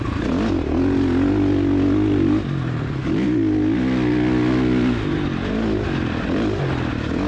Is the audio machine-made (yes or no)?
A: no